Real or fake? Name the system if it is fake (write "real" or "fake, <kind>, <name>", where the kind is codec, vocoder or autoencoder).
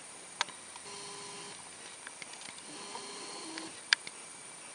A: real